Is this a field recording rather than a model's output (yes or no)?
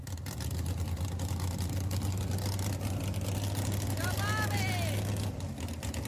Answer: yes